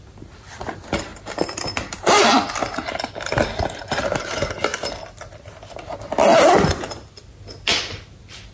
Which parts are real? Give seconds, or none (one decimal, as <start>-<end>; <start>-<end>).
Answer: 0.0-8.5